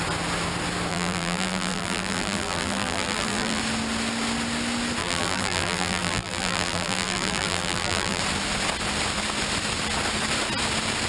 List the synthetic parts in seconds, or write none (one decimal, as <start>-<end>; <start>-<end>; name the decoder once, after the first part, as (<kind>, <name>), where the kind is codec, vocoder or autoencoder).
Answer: 0.9-3.6 (vocoder, BigVGAN v2); 5.0-8.2